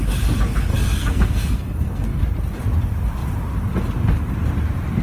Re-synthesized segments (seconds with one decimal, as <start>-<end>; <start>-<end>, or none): 0.7-2.2

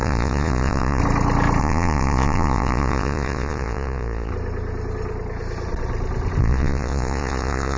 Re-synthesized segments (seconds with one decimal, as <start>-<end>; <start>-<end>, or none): 0.0-1.0; 1.6-4.3; 6.4-7.8

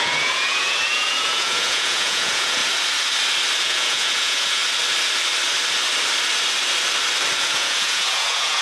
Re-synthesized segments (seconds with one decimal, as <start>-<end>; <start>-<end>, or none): 0.0-2.6; 3.6-4.6; 7.4-8.6

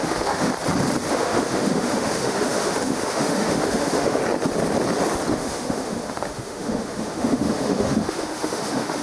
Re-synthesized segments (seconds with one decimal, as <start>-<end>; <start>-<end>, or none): 0.0-0.5; 1.1-4.2; 5.3-9.0

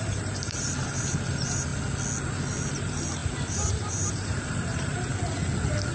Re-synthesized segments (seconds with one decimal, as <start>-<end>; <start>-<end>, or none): 0.0-1.7; 2.7-5.1

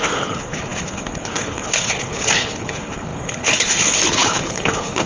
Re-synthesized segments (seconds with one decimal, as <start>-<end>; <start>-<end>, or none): 0.0-5.1

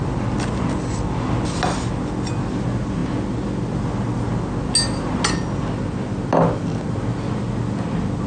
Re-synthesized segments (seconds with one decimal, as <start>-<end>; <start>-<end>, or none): none

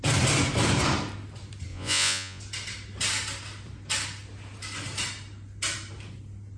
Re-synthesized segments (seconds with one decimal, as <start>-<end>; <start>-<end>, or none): 1.7-2.4